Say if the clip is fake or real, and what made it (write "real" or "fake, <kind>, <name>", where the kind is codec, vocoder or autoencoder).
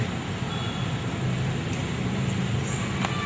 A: real